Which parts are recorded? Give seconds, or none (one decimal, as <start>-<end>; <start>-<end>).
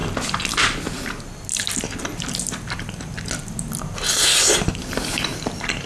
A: 0.0-5.9